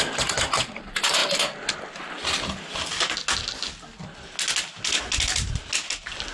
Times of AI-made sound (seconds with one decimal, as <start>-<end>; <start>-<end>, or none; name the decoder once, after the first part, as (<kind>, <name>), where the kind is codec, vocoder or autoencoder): none